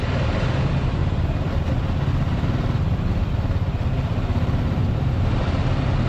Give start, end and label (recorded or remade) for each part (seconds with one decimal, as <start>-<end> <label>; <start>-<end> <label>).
0.0-1.0 recorded; 1.0-1.6 remade; 1.6-2.1 recorded; 2.1-6.1 remade